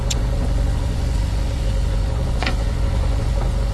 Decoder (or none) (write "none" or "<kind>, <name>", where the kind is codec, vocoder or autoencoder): vocoder, Vocos